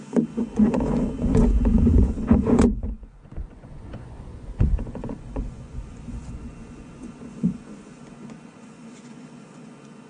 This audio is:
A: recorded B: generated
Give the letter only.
B